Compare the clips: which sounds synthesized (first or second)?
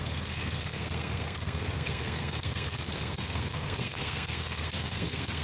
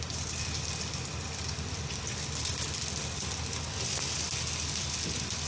first